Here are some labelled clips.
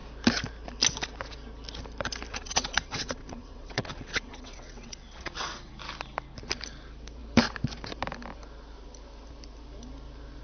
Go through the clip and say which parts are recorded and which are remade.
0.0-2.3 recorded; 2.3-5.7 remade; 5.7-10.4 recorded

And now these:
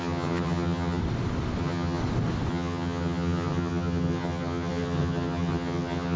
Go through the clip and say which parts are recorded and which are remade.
0.0-1.0 remade; 1.0-1.6 recorded; 1.6-2.0 remade; 2.0-2.5 recorded; 2.5-6.2 remade

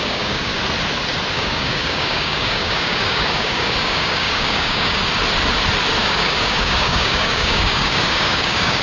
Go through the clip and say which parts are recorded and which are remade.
0.0-0.5 remade; 0.5-1.3 recorded; 1.3-5.0 remade; 5.0-6.0 recorded; 6.0-8.8 remade

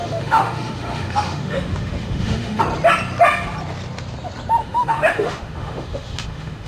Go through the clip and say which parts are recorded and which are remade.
0.0-2.6 remade; 2.6-4.6 recorded; 4.6-6.7 remade

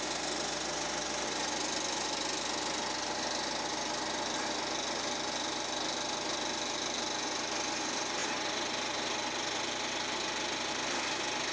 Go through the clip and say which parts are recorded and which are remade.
0.0-11.5 recorded

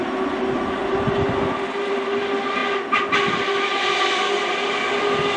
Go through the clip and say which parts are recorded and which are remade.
0.0-5.4 recorded

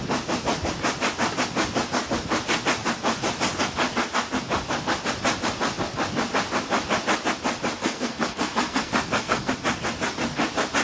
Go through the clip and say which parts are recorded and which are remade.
0.0-7.8 recorded; 7.8-9.5 remade; 9.5-10.8 recorded